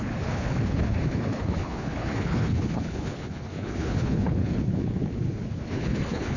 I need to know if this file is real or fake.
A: fake